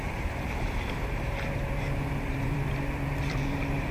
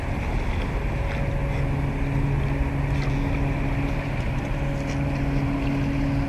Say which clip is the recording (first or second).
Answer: second